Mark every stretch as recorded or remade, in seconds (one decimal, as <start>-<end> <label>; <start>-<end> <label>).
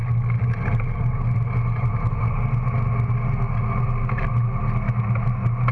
0.0-5.7 recorded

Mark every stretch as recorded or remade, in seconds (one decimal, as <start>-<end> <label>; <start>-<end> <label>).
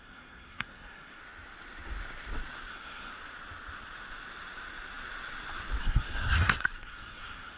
0.0-1.2 remade; 1.2-2.7 recorded; 2.7-3.1 remade; 3.1-5.8 recorded; 5.8-7.6 remade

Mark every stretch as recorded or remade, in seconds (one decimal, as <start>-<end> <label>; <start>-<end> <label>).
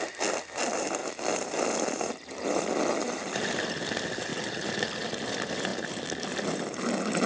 0.0-7.3 recorded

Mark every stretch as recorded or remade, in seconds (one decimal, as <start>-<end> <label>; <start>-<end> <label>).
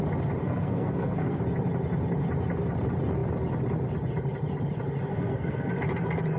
0.0-0.4 recorded; 0.4-1.4 remade; 1.4-5.1 recorded; 5.1-5.7 remade; 5.7-6.4 recorded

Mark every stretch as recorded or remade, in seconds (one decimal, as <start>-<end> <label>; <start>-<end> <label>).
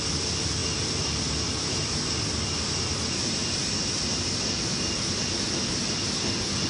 0.0-6.7 recorded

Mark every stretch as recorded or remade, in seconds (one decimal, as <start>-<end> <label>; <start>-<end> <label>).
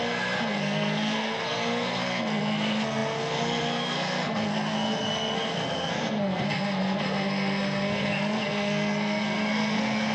0.0-10.1 remade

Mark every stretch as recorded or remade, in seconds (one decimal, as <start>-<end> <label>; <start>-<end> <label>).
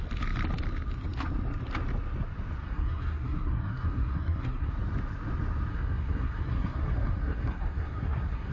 0.0-2.6 recorded; 2.6-4.7 remade; 4.7-5.7 recorded; 5.7-8.5 remade